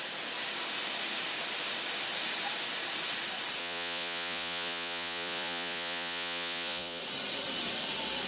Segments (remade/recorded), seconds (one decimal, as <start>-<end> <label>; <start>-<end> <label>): 0.0-3.6 recorded; 3.6-7.0 remade; 7.0-8.3 recorded

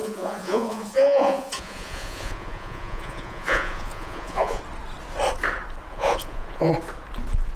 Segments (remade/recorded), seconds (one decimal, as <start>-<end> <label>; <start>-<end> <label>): 0.0-4.6 remade; 4.6-5.9 recorded; 5.9-6.7 remade; 6.7-7.6 recorded

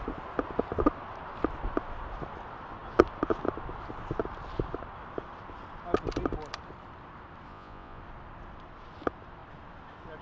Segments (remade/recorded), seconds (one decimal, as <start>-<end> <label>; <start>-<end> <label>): 0.0-7.5 recorded; 7.5-8.0 remade; 8.0-10.2 recorded

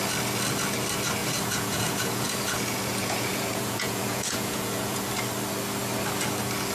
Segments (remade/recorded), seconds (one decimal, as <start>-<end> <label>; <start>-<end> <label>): 0.0-1.2 recorded; 1.2-5.1 remade; 5.1-6.7 recorded

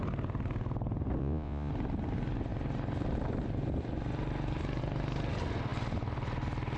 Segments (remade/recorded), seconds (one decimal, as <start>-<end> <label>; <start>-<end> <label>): 0.0-1.2 recorded; 1.2-1.7 remade; 1.7-6.8 recorded